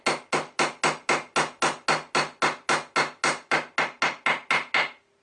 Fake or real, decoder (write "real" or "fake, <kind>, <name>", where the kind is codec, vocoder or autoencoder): real